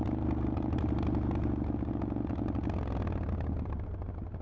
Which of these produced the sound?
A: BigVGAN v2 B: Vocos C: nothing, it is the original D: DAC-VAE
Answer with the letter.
C